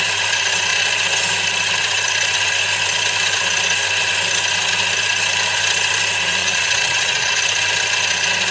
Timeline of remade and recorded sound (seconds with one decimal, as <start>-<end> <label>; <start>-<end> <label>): 0.0-6.4 recorded; 6.4-7.3 remade; 7.3-8.5 recorded